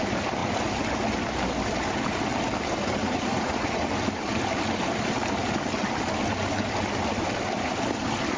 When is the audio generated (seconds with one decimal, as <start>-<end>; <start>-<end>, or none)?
3.0-3.9